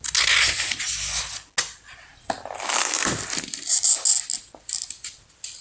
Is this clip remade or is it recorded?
recorded